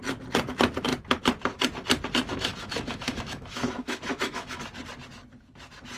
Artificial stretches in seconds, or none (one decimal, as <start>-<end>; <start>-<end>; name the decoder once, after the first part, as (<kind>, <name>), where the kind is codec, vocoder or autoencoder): 2.3-4.6 (autoencoder, DAC-VAE)